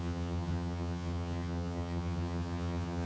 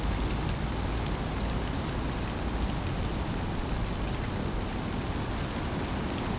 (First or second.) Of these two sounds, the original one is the second